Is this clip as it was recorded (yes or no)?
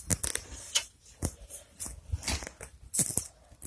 yes